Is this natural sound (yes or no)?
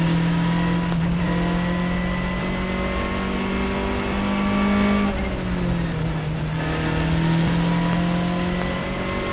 yes